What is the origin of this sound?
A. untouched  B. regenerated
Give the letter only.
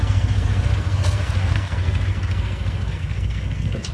B